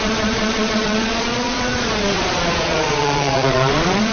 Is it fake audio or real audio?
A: fake